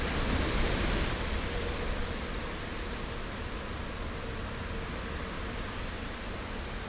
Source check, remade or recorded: recorded